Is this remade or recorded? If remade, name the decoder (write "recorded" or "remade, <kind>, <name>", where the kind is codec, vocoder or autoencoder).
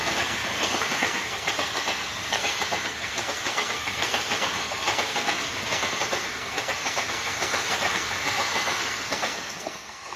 remade, codec, SNAC